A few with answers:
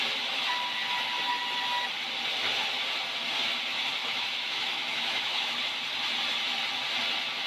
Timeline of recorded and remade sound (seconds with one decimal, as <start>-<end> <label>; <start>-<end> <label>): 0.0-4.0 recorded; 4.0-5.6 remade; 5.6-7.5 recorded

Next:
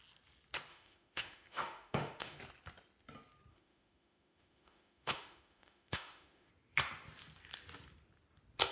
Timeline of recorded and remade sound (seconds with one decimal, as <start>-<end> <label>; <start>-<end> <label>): 0.0-0.7 recorded; 0.7-2.4 remade; 2.4-3.5 recorded; 3.5-6.5 remade; 6.5-8.7 recorded

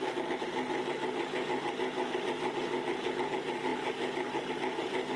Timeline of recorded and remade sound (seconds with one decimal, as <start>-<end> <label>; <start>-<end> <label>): 0.0-5.2 recorded